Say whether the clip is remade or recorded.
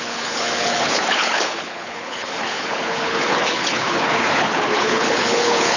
remade